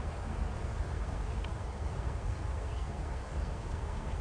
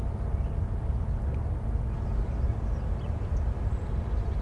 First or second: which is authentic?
second